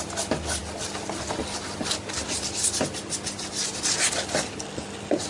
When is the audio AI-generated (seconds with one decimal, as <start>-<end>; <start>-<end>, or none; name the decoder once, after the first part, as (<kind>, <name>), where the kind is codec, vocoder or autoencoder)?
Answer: none